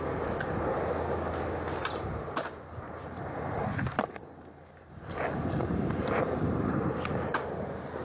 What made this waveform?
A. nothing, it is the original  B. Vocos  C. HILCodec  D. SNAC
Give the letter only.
A